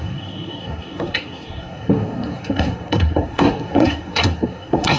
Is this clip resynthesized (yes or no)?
yes